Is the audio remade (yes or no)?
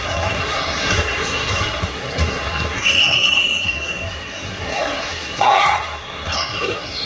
yes